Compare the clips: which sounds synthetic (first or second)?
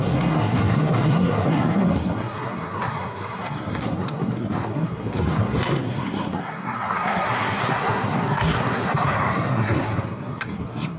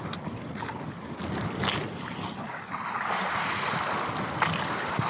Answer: first